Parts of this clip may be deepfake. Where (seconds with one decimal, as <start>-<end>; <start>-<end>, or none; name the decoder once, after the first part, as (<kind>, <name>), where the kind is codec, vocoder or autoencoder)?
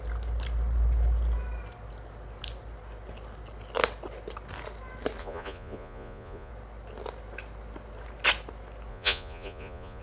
5.2-6.5 (vocoder, Vocos); 8.9-10.0